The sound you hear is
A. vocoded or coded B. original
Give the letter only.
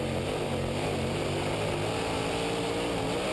B